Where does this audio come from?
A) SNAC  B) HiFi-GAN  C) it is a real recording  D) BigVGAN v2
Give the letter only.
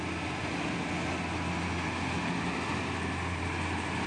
C